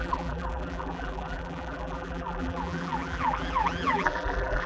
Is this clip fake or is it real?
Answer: fake